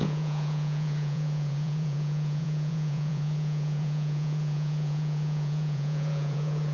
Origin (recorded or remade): remade